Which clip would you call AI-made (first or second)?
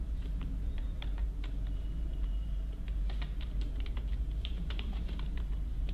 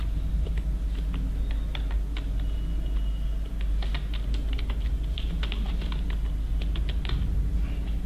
first